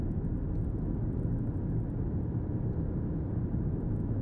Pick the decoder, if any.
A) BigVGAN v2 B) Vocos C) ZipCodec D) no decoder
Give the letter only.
D